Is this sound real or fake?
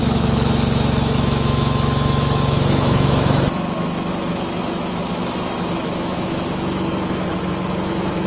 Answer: fake